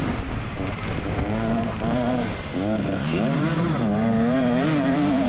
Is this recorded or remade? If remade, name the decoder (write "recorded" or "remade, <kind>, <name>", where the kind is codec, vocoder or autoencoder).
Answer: remade, vocoder, BigVGAN v2